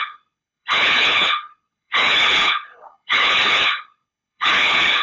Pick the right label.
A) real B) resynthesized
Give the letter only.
B